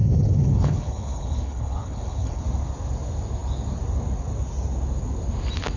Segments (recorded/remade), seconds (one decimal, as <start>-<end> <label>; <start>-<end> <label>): 0.0-2.4 remade; 2.4-5.8 recorded